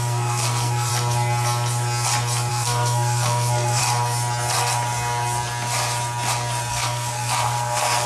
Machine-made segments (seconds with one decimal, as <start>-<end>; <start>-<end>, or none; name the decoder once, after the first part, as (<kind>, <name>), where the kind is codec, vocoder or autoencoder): 0.0-0.9 (codec, SNAC); 2.5-3.8; 6.7-8.1

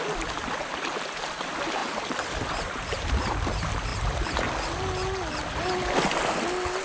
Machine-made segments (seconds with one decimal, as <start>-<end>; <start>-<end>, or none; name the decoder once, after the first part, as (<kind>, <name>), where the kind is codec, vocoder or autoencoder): none

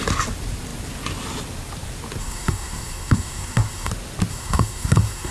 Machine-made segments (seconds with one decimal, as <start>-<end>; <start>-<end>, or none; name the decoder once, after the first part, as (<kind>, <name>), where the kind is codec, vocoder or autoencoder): 2.2-3.9 (codec, SNAC); 4.3-5.3

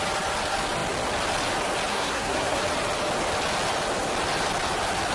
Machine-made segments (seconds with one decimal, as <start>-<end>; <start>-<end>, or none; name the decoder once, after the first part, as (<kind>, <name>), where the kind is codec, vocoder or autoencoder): 1.9-2.6 (codec, SNAC)

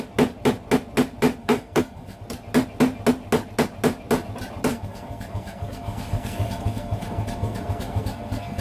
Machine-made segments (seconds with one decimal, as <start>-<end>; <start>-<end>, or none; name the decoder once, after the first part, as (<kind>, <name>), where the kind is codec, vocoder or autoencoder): 1.4-2.2 (codec, SNAC); 4.7-8.6

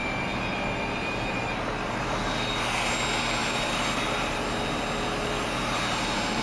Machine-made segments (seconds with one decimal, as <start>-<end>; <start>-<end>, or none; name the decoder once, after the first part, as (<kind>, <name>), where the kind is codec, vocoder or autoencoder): none